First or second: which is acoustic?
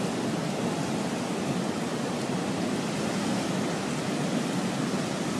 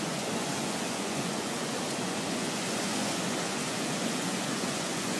first